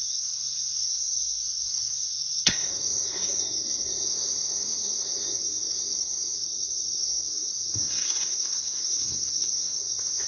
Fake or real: fake